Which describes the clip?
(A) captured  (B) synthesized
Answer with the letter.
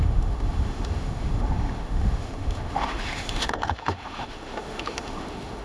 B